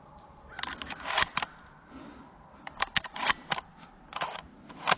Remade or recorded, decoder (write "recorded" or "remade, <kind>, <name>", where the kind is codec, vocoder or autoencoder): recorded